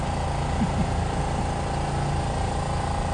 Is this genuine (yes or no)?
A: yes